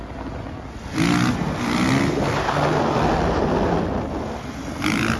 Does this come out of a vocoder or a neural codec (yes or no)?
no